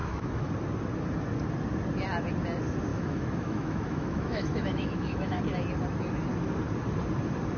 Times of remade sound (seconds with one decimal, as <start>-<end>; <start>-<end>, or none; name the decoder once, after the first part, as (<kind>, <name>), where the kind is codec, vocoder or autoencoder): 0.0-0.5 (autoencoder, DAC-VAE); 2.9-5.4